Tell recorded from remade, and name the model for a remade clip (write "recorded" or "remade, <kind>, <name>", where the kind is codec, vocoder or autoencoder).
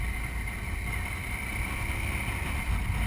recorded